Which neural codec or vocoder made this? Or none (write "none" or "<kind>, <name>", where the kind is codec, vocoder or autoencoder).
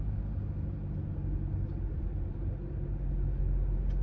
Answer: none